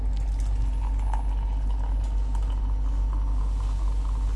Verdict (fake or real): real